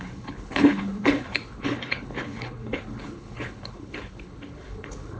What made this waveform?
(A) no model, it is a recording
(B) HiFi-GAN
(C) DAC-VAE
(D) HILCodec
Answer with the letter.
D